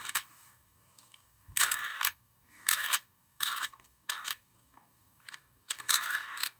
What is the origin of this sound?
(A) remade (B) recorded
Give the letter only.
A